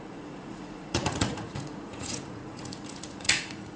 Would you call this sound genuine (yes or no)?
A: no